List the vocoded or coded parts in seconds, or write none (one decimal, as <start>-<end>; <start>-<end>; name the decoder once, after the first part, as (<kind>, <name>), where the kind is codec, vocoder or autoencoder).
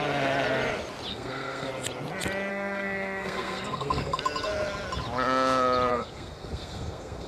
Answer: 1.1-1.7 (codec, SNAC); 2.5-4.2; 5.9-7.3